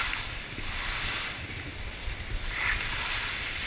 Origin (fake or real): fake